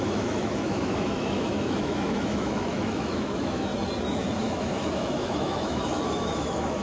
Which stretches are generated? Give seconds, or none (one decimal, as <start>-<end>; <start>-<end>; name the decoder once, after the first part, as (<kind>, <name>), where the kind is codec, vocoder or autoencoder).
0.0-3.7 (autoencoder, DAC-VAE); 4.4-6.8

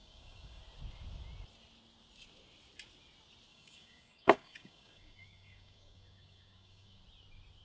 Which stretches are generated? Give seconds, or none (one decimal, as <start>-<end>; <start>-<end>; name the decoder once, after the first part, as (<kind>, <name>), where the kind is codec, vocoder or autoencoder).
0.0-0.6 (codec, DAC); 3.5-7.0